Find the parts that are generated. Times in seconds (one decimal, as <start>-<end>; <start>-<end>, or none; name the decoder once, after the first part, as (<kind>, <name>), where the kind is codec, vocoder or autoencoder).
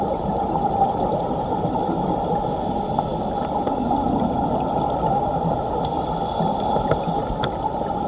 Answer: none